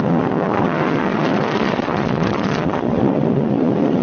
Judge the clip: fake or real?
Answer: fake